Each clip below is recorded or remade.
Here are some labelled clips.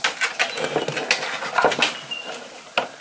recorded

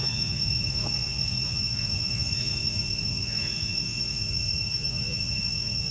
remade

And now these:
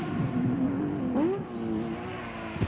recorded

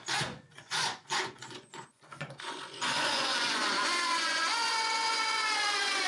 remade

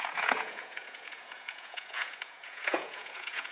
remade